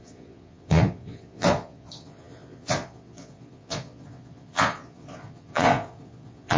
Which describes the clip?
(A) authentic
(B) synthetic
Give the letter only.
B